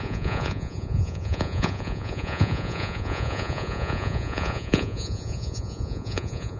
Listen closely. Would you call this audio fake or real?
fake